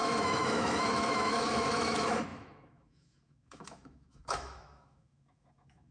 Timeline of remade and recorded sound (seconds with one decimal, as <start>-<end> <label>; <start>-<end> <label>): 0.0-5.9 remade